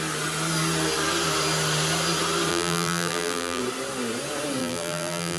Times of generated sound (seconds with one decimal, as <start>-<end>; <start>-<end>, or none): 2.5-3.6; 4.6-5.4